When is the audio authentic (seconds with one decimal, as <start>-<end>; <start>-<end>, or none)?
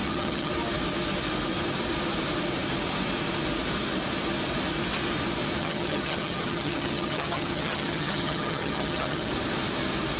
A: 0.5-5.6; 9.3-10.2